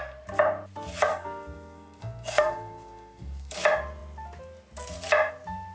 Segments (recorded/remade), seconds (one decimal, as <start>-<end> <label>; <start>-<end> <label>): 0.0-1.1 recorded; 1.1-3.6 remade; 3.6-5.7 recorded